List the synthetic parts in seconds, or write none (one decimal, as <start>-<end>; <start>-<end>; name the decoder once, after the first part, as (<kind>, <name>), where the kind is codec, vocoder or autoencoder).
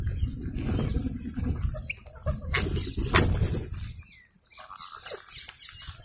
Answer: none